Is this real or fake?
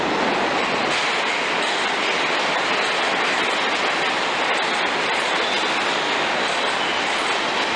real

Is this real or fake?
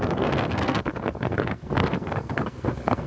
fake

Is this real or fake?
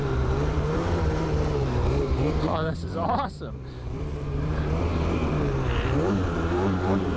fake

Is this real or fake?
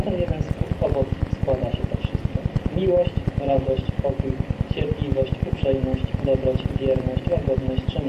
real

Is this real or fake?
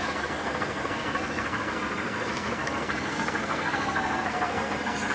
fake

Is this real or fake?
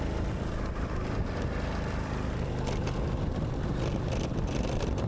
fake